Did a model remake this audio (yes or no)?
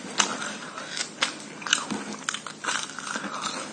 no